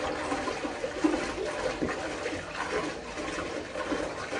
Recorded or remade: recorded